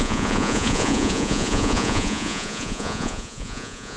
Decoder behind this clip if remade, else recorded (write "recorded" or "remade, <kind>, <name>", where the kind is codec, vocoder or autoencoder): remade, vocoder, Vocos